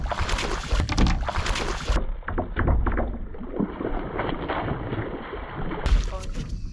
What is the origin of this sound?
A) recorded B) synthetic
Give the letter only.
A